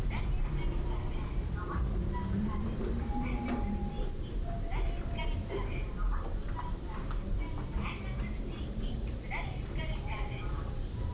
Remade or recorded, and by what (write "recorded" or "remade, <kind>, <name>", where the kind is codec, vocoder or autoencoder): remade, vocoder, BigVGAN v2